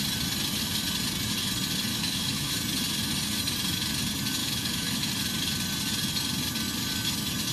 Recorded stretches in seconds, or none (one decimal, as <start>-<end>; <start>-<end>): 0.0-1.9; 2.6-4.4; 5.1-7.5